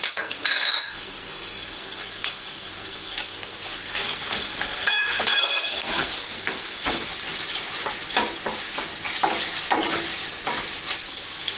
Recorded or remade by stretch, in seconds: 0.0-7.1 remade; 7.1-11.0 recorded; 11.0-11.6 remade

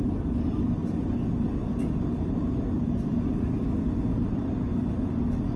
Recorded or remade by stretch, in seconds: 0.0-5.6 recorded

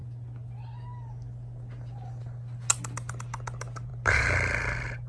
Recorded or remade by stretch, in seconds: 0.0-5.1 recorded

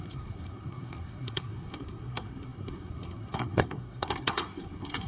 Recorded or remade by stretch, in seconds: 0.0-5.1 remade

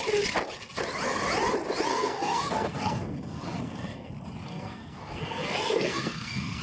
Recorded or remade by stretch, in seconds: 0.0-1.9 recorded; 1.9-4.1 remade; 4.1-4.5 recorded; 4.5-6.6 remade

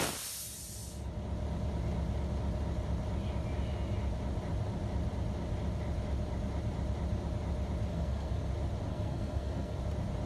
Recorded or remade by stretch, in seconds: 0.0-7.9 recorded; 7.9-8.5 remade; 8.5-8.9 recorded; 8.9-9.8 remade; 9.8-10.3 recorded

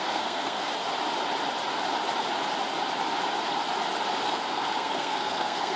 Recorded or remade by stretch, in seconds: 0.0-0.7 remade; 0.7-4.2 recorded; 4.2-5.8 remade